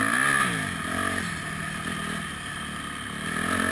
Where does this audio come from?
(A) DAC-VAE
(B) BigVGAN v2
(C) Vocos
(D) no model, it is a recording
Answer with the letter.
D